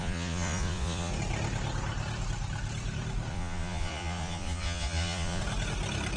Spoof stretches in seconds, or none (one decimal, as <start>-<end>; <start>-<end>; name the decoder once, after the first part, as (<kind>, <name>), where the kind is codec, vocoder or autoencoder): 0.0-1.1 (vocoder, Vocos); 3.3-5.4